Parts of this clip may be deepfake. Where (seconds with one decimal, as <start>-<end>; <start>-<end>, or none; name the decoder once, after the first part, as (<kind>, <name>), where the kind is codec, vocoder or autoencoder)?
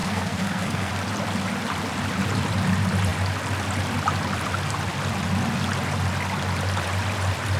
0.0-0.9 (codec, SNAC)